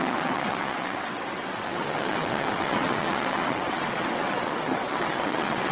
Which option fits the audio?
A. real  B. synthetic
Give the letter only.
B